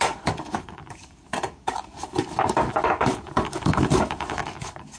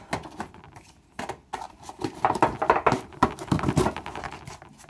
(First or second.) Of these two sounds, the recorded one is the second